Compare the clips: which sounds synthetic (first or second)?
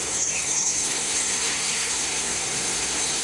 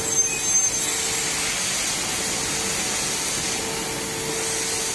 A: first